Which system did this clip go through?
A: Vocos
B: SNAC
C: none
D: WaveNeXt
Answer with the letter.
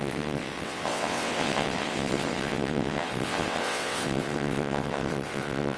D